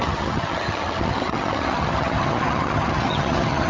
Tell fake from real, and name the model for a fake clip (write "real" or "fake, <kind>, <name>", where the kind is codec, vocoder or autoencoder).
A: fake, vocoder, HiFi-GAN